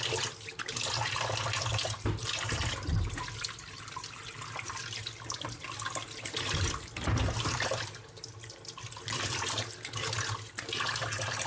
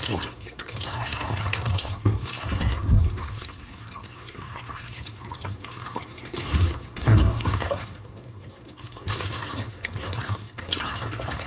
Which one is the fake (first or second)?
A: second